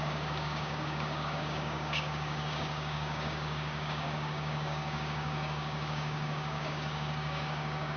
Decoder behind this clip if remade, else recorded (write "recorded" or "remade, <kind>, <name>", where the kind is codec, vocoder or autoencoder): remade, codec, DAC